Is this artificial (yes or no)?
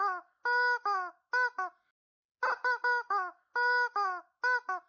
no